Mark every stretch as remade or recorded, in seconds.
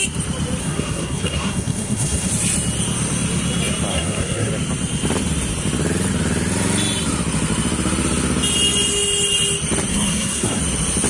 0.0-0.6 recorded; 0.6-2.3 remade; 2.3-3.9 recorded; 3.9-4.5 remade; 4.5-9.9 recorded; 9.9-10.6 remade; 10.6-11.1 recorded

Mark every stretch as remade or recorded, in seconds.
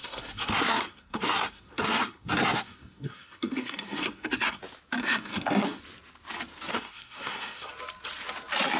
0.0-4.6 remade; 4.6-5.0 recorded; 5.0-5.8 remade; 5.8-6.7 recorded; 6.7-7.7 remade; 7.7-8.8 recorded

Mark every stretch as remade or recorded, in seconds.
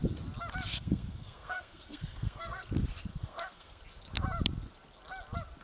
0.0-0.7 recorded; 0.7-2.7 remade; 2.7-3.1 recorded; 3.1-3.8 remade; 3.8-5.6 recorded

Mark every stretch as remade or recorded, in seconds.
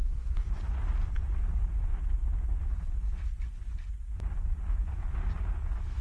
0.0-0.5 remade; 0.5-6.0 recorded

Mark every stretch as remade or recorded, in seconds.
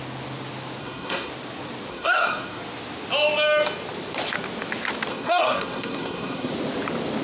0.0-0.8 recorded; 0.8-1.3 remade; 1.3-1.9 recorded; 1.9-2.6 remade; 2.6-5.1 recorded; 5.1-6.5 remade; 6.5-7.2 recorded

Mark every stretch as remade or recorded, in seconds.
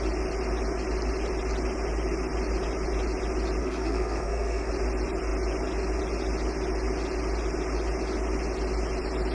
0.0-3.6 recorded; 3.6-4.7 remade; 4.7-9.3 recorded